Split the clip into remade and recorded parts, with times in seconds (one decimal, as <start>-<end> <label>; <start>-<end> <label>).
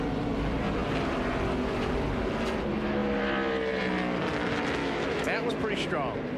0.0-4.8 recorded; 4.8-5.5 remade; 5.5-6.4 recorded